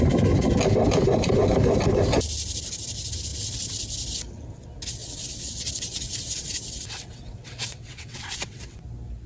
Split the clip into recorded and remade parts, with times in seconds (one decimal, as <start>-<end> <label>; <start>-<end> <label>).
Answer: 0.0-5.0 recorded; 5.0-8.8 remade; 8.8-9.3 recorded